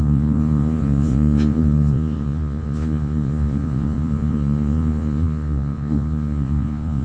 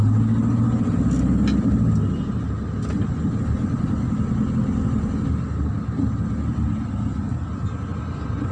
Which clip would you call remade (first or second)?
first